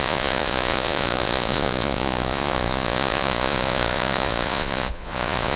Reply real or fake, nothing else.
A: fake